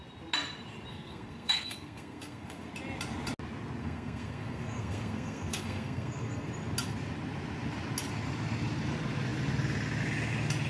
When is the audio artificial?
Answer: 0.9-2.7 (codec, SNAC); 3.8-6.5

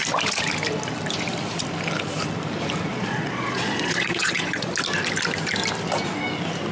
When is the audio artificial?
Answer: 2.9-4.7 (vocoder, Vocos)